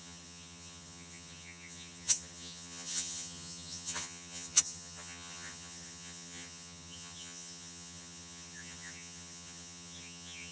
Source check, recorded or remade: remade